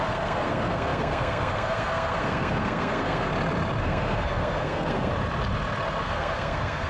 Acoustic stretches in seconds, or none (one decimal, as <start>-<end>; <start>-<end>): 3.3-3.8; 5.1-6.0